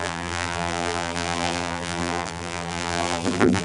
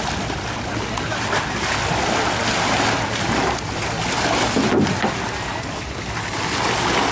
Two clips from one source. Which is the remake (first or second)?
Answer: first